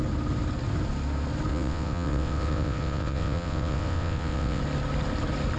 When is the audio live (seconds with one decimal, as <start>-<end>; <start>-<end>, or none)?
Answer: 0.0-1.5; 4.6-5.6